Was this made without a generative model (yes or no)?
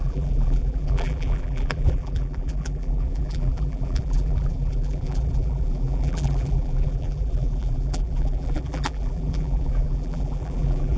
no